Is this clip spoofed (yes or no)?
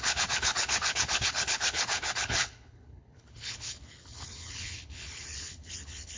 yes